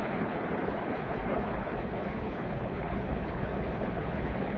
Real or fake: fake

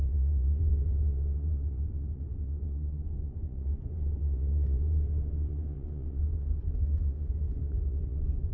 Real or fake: fake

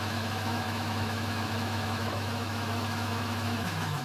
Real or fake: fake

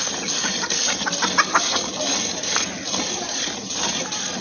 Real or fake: real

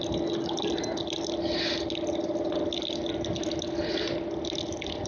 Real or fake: real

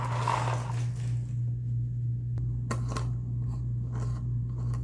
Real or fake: real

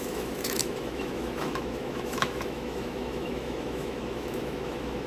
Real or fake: fake